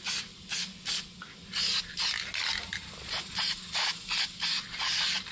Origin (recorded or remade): recorded